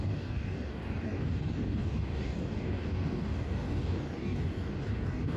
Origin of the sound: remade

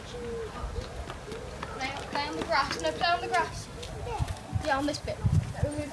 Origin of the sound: recorded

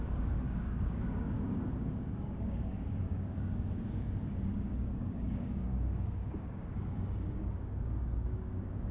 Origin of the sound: remade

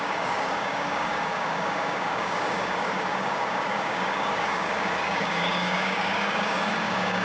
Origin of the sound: remade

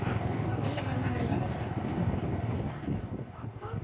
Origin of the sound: remade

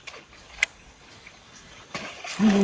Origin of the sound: remade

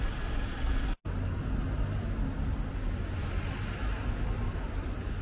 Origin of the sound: recorded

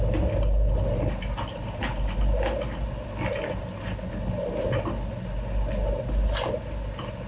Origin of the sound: recorded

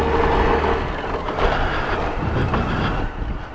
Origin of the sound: recorded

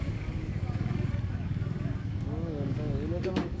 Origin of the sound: remade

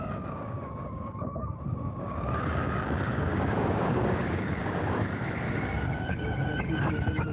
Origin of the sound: remade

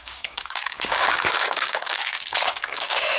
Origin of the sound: remade